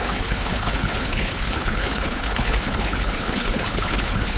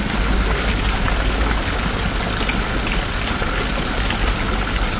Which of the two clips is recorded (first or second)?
second